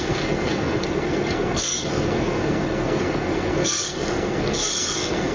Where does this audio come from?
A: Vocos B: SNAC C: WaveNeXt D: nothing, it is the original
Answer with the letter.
B